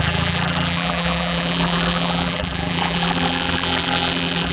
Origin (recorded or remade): remade